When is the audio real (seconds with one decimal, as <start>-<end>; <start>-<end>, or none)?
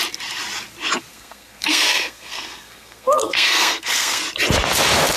0.0-1.1; 4.2-5.2